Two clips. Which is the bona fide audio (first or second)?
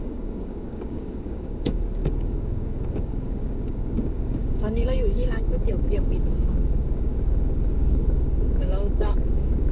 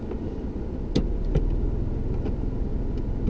second